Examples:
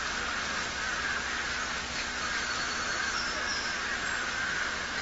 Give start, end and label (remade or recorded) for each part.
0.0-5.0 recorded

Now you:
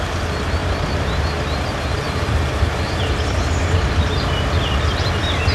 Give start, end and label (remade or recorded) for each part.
0.0-0.6 recorded; 0.6-3.9 remade; 3.9-5.5 recorded

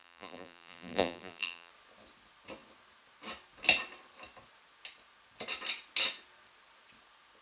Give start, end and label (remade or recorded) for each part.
0.0-1.7 remade; 1.7-7.4 recorded

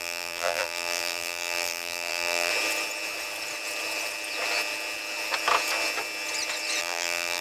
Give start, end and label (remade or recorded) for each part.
0.0-2.5 remade; 2.5-6.8 recorded; 6.8-7.4 remade

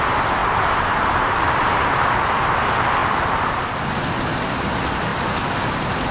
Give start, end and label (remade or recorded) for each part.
0.0-5.1 recorded; 5.1-6.1 remade

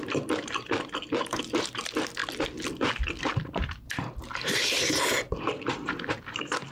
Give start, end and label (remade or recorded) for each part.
0.0-2.2 remade; 2.2-3.2 recorded; 3.2-6.7 remade

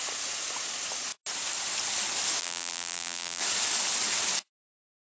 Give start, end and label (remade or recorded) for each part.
0.0-2.4 recorded; 2.4-3.4 remade; 3.4-5.2 recorded